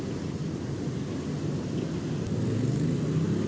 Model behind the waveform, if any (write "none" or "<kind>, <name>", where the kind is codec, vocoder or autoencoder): none